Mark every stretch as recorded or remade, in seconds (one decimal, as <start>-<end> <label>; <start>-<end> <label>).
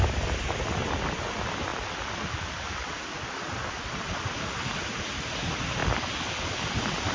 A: 0.0-1.7 recorded; 1.7-5.3 remade; 5.3-5.8 recorded; 5.8-7.1 remade